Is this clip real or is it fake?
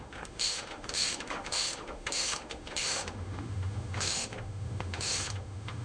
fake